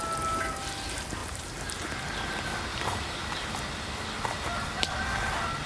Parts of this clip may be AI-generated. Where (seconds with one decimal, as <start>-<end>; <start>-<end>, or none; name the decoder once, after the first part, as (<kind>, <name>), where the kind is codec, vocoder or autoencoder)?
1.2-1.9 (vocoder, BigVGAN v2); 2.7-3.5